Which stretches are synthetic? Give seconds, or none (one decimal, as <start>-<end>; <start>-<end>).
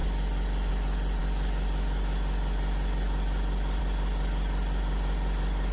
none